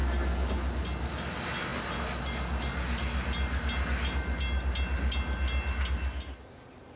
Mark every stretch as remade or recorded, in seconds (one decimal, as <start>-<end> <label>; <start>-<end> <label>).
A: 0.0-7.0 recorded